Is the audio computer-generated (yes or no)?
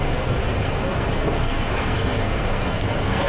yes